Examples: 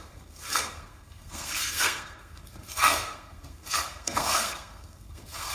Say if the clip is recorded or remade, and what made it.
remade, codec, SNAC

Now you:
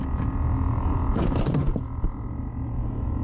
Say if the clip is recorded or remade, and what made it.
recorded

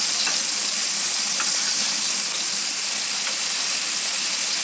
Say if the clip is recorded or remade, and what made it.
recorded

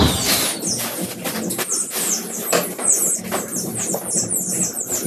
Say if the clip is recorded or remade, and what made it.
recorded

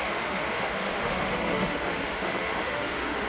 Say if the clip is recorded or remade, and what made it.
remade, autoencoder, DAC-VAE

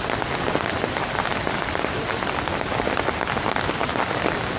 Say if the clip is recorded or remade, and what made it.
recorded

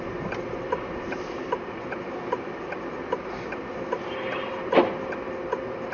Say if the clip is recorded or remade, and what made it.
recorded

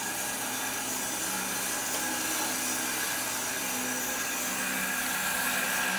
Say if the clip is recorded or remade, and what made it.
recorded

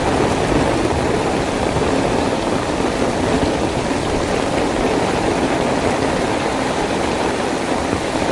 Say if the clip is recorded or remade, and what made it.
recorded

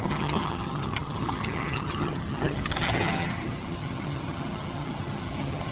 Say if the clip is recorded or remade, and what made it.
remade, vocoder, HiFi-GAN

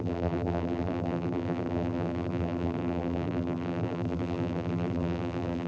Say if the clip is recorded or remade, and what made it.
remade, vocoder, BigVGAN v2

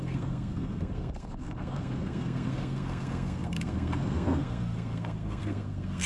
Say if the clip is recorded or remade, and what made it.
remade, codec, SNAC